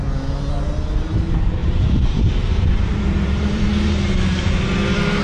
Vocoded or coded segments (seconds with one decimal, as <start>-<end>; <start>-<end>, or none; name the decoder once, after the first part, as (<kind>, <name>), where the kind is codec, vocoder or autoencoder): 1.6-4.1 (vocoder, BigVGAN v2)